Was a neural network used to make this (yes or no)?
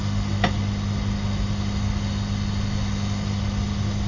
no